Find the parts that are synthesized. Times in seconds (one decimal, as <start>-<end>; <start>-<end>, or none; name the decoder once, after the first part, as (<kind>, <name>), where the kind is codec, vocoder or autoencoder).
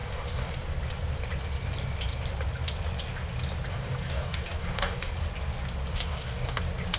0.0-0.5 (codec, DAC); 3.7-5.1; 5.9-6.6